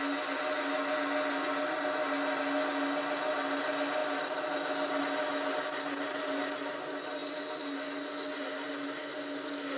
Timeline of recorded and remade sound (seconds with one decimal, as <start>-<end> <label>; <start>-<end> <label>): 0.0-9.8 recorded